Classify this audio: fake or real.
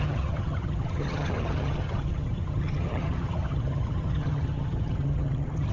fake